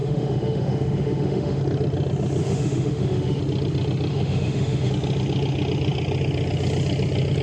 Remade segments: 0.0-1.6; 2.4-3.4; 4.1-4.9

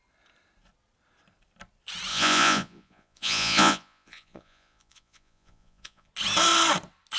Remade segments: 2.1-6.1

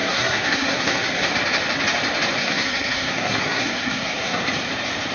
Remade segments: 0.0-1.3; 2.4-4.4

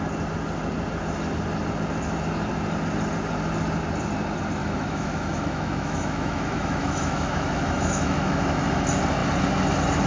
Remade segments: 4.6-8.7

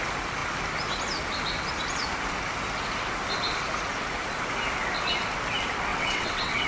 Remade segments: 5.9-6.7

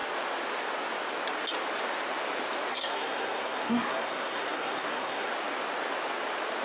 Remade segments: 2.7-5.3

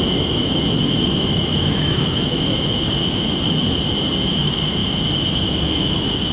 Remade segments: 0.0-3.3; 4.3-6.3

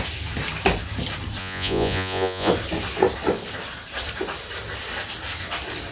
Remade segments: 1.4-2.5